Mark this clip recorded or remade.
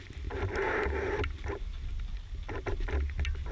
recorded